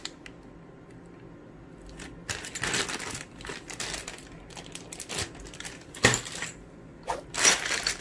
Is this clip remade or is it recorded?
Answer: recorded